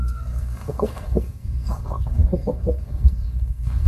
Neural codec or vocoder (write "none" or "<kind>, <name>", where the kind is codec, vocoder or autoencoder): codec, SNAC